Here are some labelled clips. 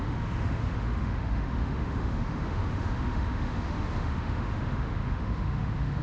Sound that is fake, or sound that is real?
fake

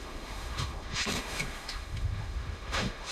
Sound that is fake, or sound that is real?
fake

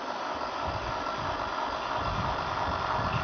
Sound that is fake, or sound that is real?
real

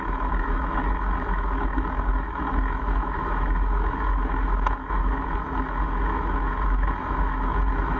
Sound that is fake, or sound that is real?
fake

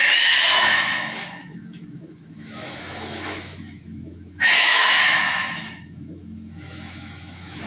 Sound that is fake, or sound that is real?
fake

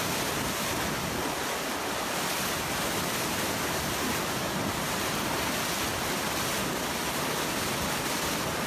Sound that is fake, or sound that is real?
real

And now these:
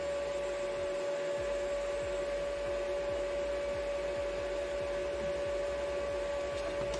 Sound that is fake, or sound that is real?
real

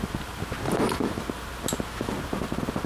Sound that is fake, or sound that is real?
real